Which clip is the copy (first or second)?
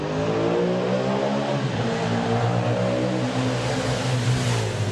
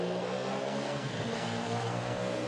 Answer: second